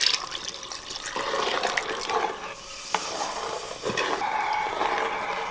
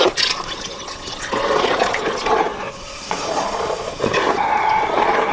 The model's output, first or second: second